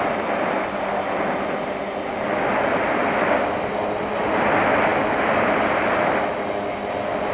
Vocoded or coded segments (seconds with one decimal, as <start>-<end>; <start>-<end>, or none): none